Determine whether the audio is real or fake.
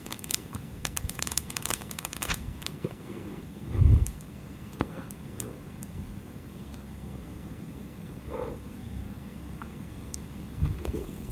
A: fake